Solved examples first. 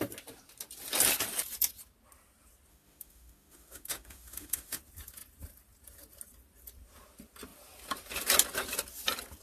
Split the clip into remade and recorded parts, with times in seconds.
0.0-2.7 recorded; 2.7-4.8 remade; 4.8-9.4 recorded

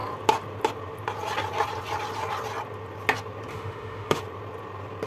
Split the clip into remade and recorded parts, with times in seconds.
0.0-3.5 recorded; 3.5-4.2 remade; 4.2-5.1 recorded

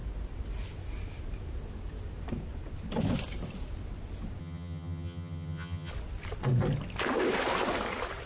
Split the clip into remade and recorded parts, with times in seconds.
0.0-4.4 recorded; 4.4-5.9 remade; 5.9-8.3 recorded

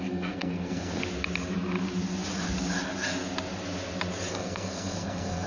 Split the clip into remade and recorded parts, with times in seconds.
0.0-1.0 remade; 1.0-4.3 recorded; 4.3-5.5 remade